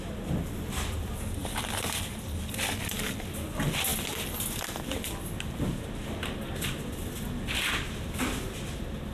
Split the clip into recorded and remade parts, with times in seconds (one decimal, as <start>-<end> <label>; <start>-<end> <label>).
0.0-9.1 recorded